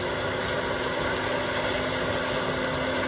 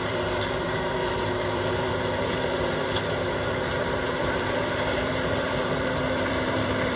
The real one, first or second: first